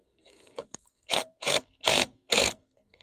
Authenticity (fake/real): fake